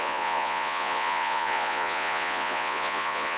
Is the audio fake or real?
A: fake